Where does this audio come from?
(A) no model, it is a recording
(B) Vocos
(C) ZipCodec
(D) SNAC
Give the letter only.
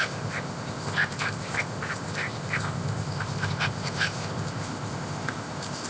C